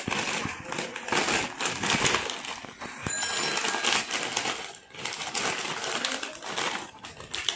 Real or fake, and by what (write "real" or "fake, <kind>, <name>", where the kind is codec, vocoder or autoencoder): real